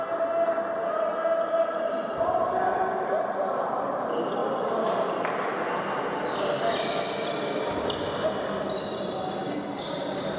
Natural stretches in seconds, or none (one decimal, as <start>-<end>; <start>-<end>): 0.0-10.4